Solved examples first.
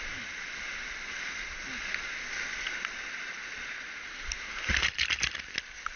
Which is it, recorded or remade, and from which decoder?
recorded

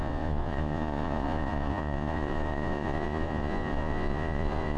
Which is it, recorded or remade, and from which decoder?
remade, vocoder, Vocos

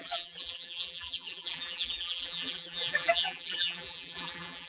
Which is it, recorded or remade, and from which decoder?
remade, vocoder, BigVGAN v2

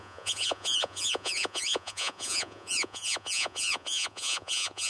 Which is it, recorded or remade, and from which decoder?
remade, vocoder, Vocos